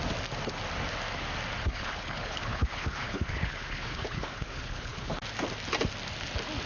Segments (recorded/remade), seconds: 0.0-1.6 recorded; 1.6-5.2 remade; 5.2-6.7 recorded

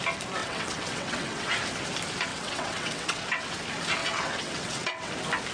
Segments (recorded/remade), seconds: 0.0-0.4 recorded; 0.4-1.5 remade; 1.5-2.3 recorded; 2.3-3.5 remade; 3.5-4.0 recorded; 4.0-5.1 remade; 5.1-5.5 recorded

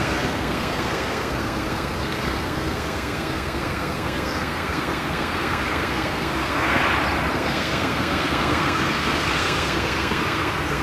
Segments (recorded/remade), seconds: 0.0-6.8 remade; 6.8-7.3 recorded; 7.3-10.8 remade

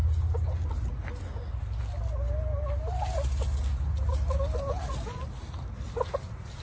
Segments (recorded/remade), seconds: 0.0-6.6 recorded

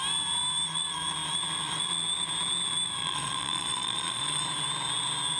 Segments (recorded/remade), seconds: 0.0-3.0 recorded; 3.0-4.4 remade; 4.4-5.4 recorded

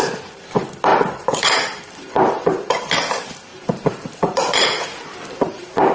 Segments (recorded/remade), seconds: 0.0-5.9 remade

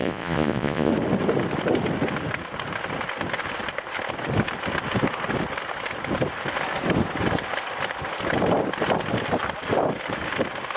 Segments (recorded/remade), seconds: 0.0-0.9 remade; 0.9-10.8 recorded

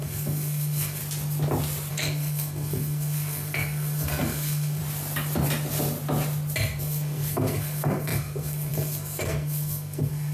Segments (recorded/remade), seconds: 0.0-1.0 remade; 1.0-1.9 recorded; 1.9-4.8 remade; 4.8-6.8 recorded; 6.8-10.3 remade